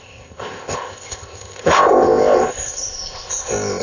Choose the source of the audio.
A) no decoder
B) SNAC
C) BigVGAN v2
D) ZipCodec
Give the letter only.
D